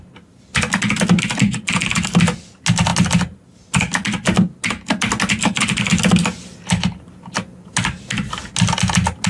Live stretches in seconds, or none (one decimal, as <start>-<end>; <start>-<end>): 0.0-9.3